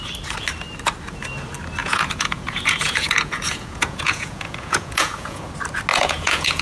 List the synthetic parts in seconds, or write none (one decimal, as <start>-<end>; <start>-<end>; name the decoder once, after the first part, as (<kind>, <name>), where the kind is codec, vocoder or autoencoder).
1.8-5.5 (vocoder, Vocos); 5.9-6.6